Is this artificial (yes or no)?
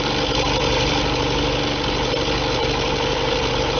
no